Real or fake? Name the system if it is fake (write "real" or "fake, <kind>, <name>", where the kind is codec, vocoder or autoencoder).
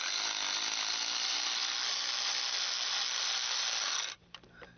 real